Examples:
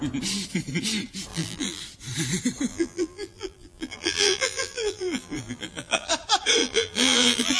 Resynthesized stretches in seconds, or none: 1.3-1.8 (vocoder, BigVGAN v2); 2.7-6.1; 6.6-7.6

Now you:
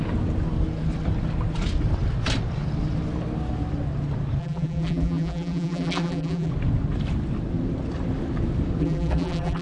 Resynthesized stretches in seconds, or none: 4.4-6.5 (vocoder, BigVGAN v2); 8.8-9.6